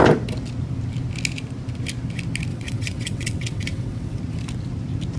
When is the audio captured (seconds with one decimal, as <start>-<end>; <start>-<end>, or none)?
0.0-2.5; 4.2-5.2